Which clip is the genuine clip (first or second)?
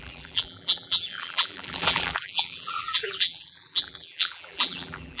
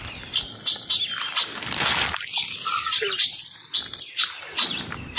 second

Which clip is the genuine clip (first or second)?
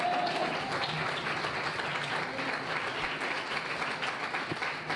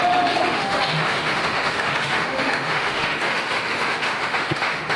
first